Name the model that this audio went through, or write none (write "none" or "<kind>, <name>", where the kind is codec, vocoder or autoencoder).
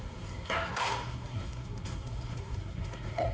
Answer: codec, SNAC